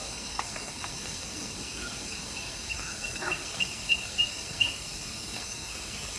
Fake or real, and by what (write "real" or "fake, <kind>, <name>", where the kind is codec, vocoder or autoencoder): fake, codec, SNAC